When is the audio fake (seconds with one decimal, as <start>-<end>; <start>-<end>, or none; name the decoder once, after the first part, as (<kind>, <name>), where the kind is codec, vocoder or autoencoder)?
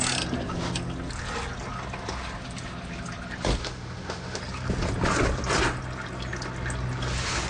3.6-4.4 (autoencoder, DAC-VAE)